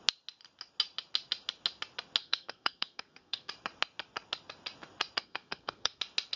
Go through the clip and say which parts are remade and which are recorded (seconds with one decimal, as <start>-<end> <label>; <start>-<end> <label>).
0.0-2.2 recorded; 2.2-3.5 remade; 3.5-5.2 recorded; 5.2-6.0 remade; 6.0-6.4 recorded